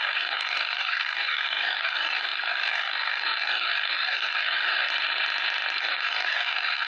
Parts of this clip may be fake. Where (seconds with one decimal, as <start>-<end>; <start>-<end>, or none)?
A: 0.0-4.9; 5.8-6.9